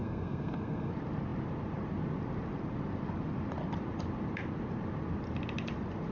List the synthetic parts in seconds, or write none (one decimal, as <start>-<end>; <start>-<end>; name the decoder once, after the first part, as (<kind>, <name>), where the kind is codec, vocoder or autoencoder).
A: 0.0-0.9 (codec, SNAC)